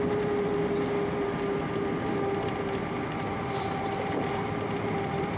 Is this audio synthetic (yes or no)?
yes